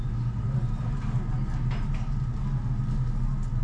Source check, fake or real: real